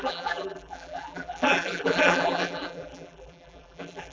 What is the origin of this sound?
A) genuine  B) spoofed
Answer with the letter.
B